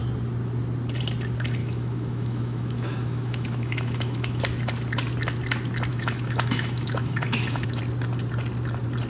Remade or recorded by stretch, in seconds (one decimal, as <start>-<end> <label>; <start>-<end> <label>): 0.0-1.6 recorded; 1.6-4.4 remade; 4.4-5.9 recorded; 5.9-7.8 remade; 7.8-9.1 recorded